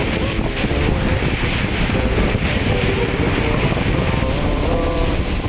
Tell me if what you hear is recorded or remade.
remade